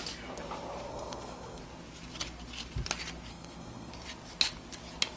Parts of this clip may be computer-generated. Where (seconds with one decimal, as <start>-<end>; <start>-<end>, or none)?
0.9-1.6; 3.3-3.9